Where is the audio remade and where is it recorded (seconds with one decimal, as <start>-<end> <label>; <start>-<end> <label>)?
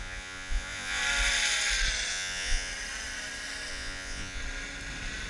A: 0.0-1.0 remade; 1.0-2.1 recorded; 2.1-2.7 remade; 2.7-3.7 recorded; 3.7-4.4 remade; 4.4-5.3 recorded